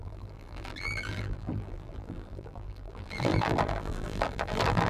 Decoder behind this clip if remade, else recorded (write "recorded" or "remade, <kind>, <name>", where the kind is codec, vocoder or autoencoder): remade, vocoder, BigVGAN v2